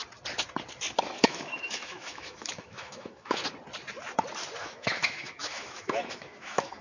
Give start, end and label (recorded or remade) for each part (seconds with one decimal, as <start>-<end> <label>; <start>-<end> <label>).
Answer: 0.0-1.2 recorded; 1.2-3.4 remade; 3.4-4.6 recorded; 4.6-6.8 remade